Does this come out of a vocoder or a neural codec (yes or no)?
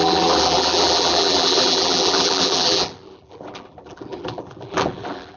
yes